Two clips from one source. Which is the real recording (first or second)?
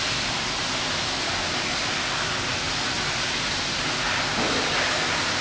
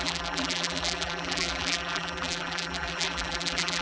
first